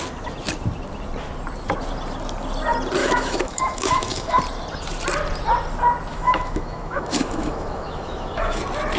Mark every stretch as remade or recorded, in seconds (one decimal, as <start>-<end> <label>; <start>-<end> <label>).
0.0-3.0 recorded; 3.0-4.4 remade; 4.4-6.1 recorded; 6.1-8.6 remade; 8.6-9.0 recorded

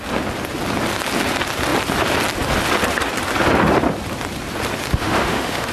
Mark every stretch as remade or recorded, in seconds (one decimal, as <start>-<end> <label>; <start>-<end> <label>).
0.0-5.0 recorded; 5.0-5.7 remade

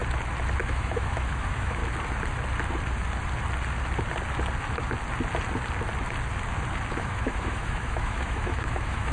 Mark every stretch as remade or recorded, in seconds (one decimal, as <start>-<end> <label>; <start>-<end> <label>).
0.0-0.6 recorded; 0.6-1.8 remade; 1.8-7.0 recorded; 7.0-9.1 remade

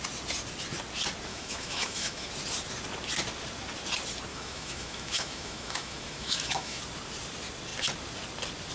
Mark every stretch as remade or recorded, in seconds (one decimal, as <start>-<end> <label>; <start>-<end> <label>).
0.0-1.3 recorded; 1.3-2.3 remade; 2.3-4.3 recorded; 4.3-6.8 remade; 6.8-8.7 recorded

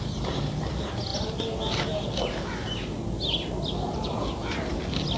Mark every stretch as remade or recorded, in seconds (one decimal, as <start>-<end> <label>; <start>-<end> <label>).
0.0-5.2 recorded

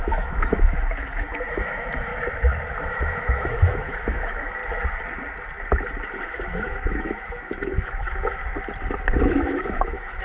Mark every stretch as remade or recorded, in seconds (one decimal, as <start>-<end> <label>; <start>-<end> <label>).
0.0-2.1 remade; 2.1-2.8 recorded; 2.8-4.6 remade; 4.6-6.2 recorded; 6.2-8.4 remade; 8.4-9.2 recorded; 9.2-10.2 remade

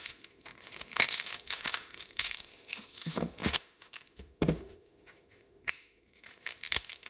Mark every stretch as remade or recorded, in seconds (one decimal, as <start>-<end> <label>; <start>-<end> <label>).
0.0-7.1 remade

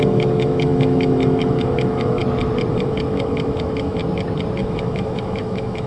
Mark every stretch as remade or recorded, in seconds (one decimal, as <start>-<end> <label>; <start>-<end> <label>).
0.0-2.2 remade; 2.2-2.7 recorded; 2.7-4.0 remade; 4.0-4.6 recorded; 4.6-5.9 remade